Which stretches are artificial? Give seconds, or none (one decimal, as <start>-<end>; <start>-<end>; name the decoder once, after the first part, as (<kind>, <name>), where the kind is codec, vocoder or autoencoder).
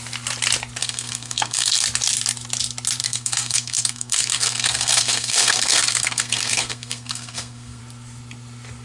0.8-1.7 (codec, SNAC); 3.0-7.8